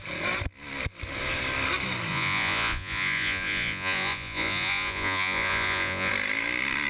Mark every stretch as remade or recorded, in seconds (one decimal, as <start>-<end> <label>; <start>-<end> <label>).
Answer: 0.0-2.1 recorded; 2.1-6.1 remade; 6.1-6.9 recorded